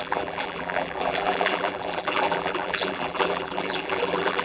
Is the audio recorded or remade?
remade